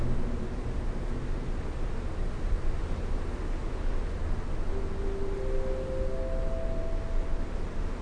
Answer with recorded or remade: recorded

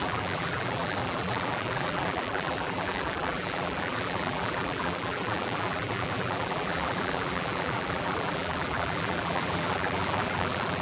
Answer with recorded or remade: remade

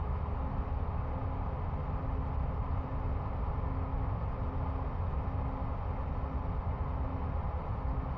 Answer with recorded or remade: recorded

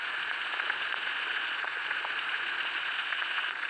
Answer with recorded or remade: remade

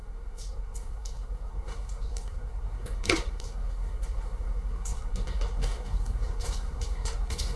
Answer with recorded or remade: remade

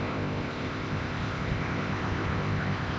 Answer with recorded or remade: remade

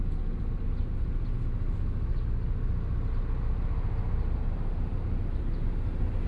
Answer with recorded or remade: recorded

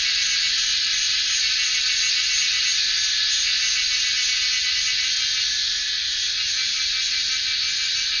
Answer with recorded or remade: recorded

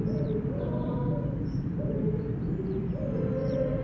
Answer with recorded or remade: recorded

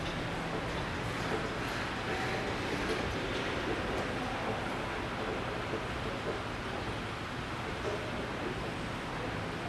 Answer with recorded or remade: recorded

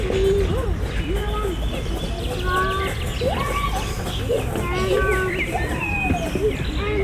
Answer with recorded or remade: recorded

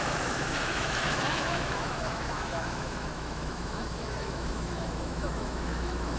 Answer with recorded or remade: remade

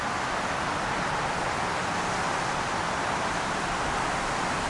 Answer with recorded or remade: recorded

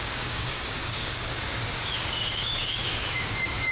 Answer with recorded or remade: remade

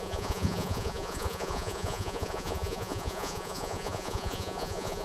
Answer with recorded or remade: remade